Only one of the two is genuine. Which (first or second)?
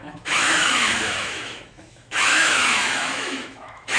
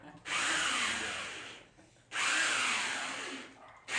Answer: second